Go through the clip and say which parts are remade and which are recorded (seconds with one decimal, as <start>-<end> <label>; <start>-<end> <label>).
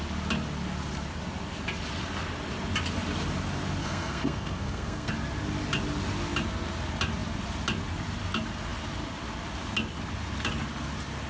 0.0-3.8 recorded; 3.8-5.1 remade; 5.1-11.3 recorded